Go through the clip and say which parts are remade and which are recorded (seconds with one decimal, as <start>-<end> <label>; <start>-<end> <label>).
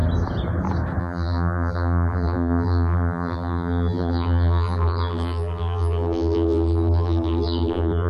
0.0-1.0 recorded; 1.0-8.1 remade